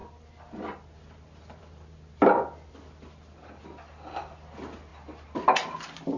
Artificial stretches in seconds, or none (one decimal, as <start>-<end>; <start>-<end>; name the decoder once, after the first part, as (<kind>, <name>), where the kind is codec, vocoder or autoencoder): none